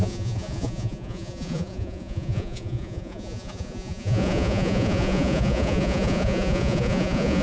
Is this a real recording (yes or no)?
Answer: no